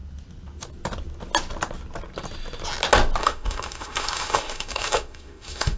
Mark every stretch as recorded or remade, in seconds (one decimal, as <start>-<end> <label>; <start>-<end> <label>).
0.0-3.2 recorded; 3.2-5.8 remade